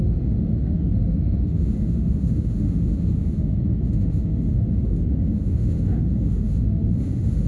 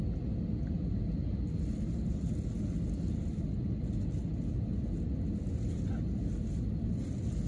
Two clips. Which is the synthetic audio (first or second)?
first